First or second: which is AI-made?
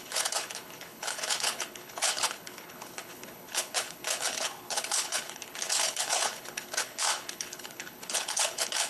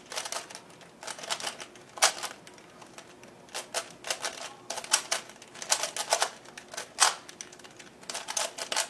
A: first